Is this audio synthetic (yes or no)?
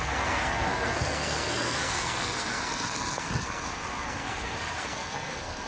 yes